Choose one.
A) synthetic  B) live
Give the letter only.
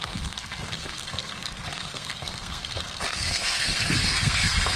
A